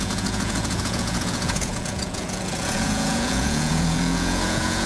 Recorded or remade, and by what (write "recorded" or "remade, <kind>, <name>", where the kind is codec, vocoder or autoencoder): remade, vocoder, Vocos